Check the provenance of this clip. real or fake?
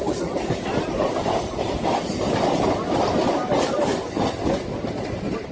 real